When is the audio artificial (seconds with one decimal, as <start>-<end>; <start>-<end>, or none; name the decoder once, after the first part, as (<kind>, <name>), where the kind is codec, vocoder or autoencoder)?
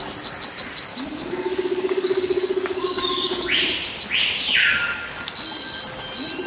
0.9-3.6 (codec, DAC); 4.7-5.2